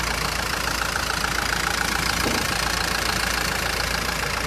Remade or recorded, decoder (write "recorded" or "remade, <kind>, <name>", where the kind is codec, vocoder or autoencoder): recorded